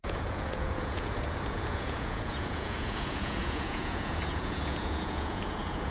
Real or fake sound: fake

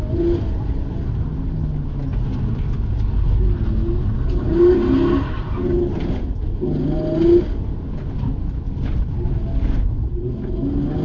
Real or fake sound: real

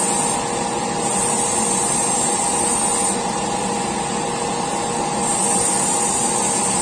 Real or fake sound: real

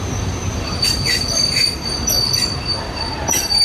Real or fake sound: real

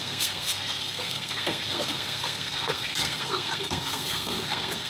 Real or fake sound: fake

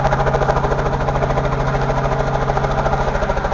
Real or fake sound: real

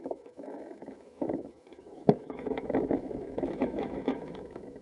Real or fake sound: fake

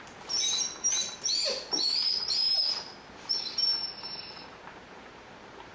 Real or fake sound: real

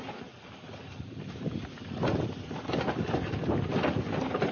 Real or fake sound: real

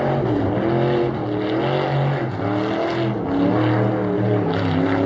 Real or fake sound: real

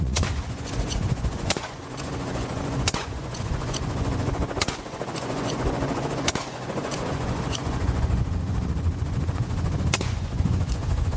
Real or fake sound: fake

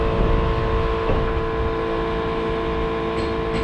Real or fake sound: real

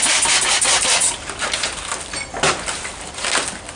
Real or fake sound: real